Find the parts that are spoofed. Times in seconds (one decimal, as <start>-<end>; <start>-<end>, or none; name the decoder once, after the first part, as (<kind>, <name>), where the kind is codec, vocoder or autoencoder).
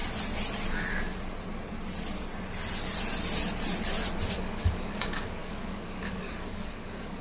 4.3-7.2 (codec, DAC)